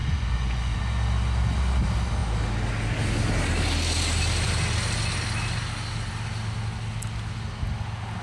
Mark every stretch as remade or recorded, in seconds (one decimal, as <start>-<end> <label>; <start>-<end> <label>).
0.0-0.8 remade; 0.8-8.2 recorded